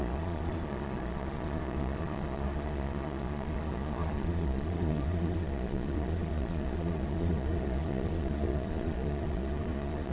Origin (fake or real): fake